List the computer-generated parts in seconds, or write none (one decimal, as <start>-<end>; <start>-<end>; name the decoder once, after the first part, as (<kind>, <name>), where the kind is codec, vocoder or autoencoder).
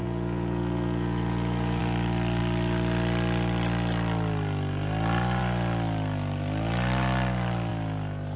0.0-1.8 (vocoder, Vocos)